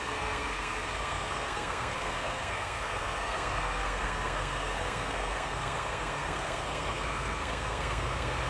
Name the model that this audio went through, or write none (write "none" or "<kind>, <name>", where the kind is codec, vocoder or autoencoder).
codec, SNAC